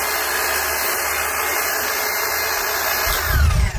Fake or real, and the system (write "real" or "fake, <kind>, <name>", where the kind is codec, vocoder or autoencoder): real